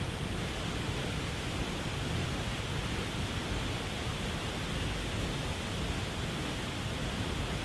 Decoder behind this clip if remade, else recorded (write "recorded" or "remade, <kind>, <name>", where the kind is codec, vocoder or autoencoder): recorded